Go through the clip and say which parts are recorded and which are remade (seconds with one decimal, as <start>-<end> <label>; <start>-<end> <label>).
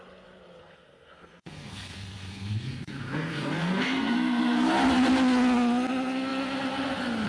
0.0-0.6 recorded; 0.6-4.7 remade; 4.7-7.3 recorded